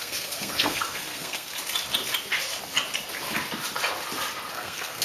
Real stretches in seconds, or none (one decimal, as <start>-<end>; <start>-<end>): 1.5-4.5